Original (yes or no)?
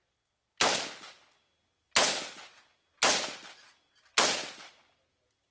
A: yes